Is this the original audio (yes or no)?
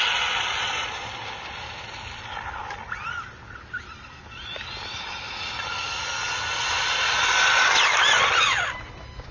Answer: yes